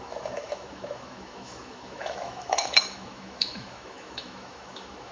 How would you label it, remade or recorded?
remade